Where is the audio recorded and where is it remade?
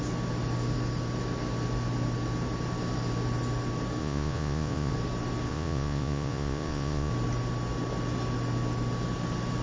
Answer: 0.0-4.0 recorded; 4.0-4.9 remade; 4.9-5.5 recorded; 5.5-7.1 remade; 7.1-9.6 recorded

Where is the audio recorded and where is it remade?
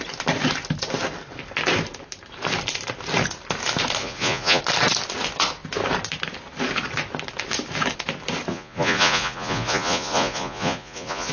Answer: 0.0-4.0 recorded; 4.0-4.6 remade; 4.6-8.5 recorded; 8.5-11.3 remade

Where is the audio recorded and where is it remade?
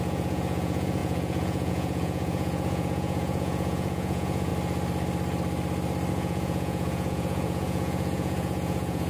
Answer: 0.0-4.5 remade; 4.5-6.1 recorded; 6.1-9.1 remade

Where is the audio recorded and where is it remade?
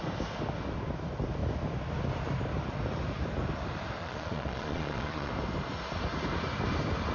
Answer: 0.0-4.0 recorded; 4.0-5.3 remade; 5.3-7.1 recorded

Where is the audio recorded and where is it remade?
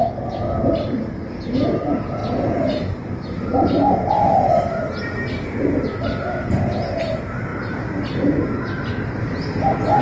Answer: 0.0-10.0 recorded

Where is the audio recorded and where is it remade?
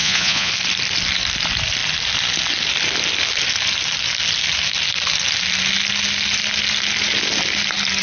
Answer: 0.0-0.5 remade; 0.5-8.0 recorded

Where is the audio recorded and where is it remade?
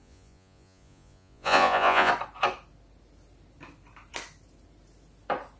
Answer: 0.0-2.1 remade; 2.1-5.6 recorded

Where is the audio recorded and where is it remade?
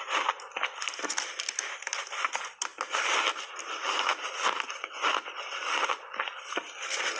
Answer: 0.0-7.2 recorded